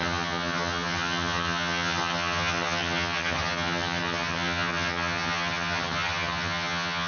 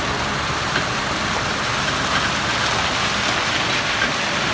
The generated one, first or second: first